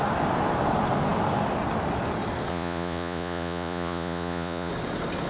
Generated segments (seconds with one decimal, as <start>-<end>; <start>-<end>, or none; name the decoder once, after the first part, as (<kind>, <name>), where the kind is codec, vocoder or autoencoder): 2.5-4.7 (vocoder, Vocos)